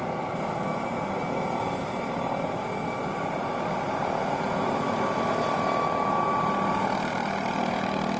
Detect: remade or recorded recorded